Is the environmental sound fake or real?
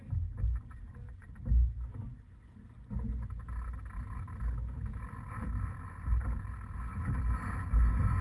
real